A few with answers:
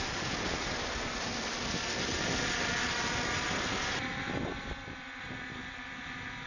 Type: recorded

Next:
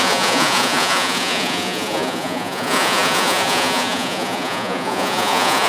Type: remade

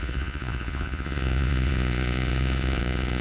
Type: remade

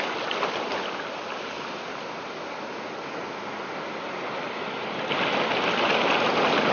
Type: recorded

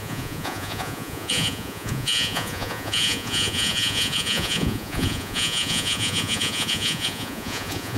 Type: remade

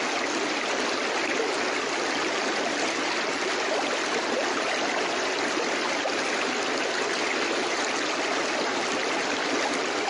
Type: recorded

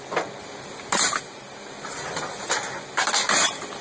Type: recorded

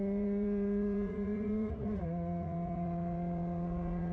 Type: remade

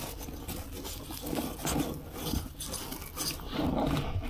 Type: recorded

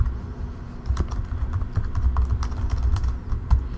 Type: recorded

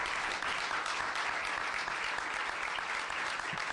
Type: recorded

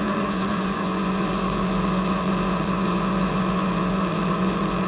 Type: remade